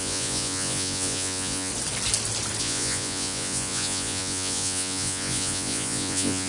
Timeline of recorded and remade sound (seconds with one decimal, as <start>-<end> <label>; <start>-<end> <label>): 0.0-1.7 remade; 1.7-2.6 recorded; 2.6-6.5 remade